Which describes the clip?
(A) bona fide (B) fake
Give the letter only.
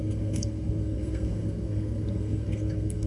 B